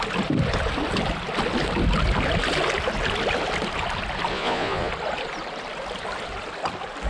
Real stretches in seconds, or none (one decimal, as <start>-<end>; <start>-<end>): 0.0-4.3; 4.9-7.1